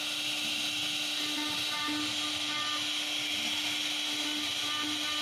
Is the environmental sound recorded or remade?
recorded